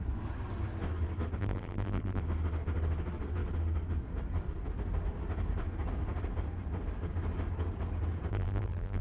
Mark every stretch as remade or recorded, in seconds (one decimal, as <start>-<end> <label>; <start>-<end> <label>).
0.0-1.4 recorded; 1.4-2.2 remade; 2.2-8.3 recorded; 8.3-9.0 remade